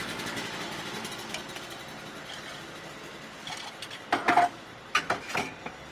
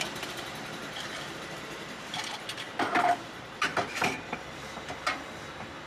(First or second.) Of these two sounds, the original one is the first